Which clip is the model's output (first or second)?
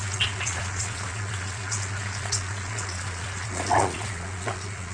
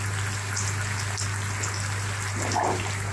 first